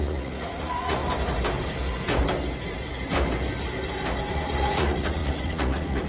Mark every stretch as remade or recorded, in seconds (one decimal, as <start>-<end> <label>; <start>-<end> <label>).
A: 0.0-1.0 remade; 1.0-4.3 recorded; 4.3-6.1 remade